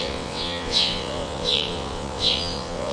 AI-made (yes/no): yes